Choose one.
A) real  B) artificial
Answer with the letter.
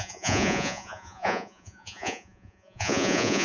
B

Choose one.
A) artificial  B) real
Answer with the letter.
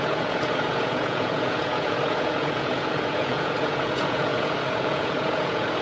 A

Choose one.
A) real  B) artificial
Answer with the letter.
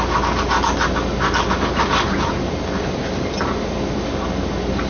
A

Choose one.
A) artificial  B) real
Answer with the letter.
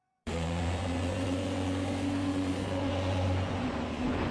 A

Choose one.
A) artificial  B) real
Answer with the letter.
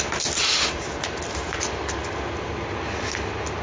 B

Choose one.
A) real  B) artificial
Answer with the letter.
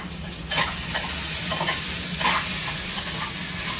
A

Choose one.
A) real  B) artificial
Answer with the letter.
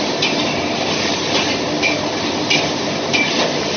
A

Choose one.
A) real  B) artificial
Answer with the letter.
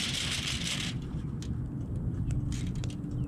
A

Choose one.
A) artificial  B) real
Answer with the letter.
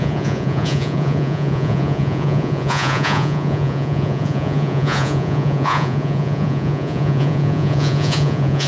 A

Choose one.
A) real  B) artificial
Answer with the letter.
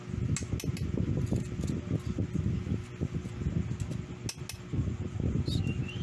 A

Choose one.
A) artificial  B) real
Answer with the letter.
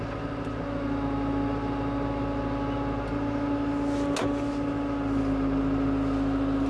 B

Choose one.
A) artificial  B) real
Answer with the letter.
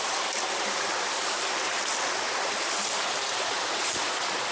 B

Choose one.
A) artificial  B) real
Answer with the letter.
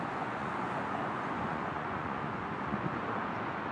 A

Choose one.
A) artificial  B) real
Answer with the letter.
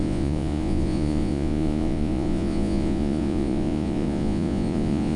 A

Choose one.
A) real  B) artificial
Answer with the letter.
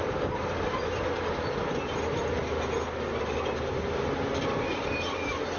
A